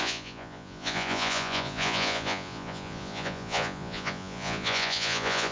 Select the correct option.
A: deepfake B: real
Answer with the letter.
A